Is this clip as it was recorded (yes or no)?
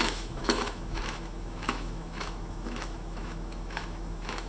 no